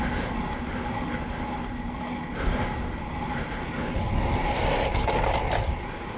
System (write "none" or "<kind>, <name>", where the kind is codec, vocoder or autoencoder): none